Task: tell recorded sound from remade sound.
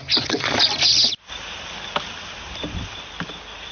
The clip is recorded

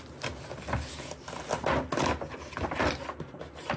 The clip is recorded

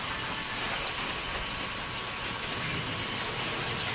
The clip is recorded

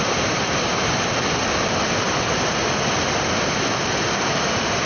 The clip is recorded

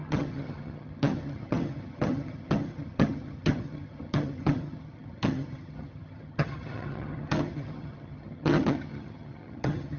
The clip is remade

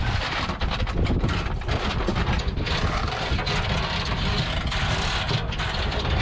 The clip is recorded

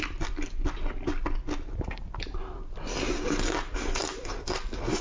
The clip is recorded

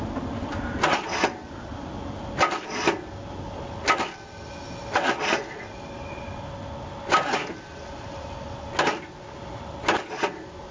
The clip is recorded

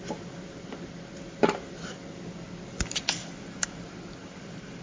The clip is recorded